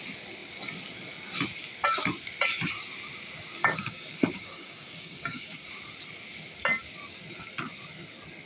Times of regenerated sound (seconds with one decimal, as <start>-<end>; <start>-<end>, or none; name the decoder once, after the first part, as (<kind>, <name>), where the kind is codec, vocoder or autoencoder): 3.6-5.7 (codec, DAC)